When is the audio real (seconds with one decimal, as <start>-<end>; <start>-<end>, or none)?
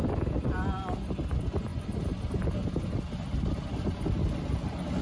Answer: 0.0-5.0